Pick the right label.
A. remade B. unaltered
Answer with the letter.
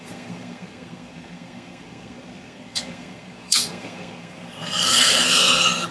A